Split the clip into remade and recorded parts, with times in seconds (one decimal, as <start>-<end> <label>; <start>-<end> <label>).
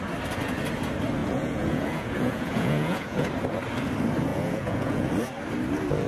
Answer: 0.0-1.2 recorded; 1.2-3.3 remade; 3.3-4.3 recorded; 4.3-5.1 remade; 5.1-6.1 recorded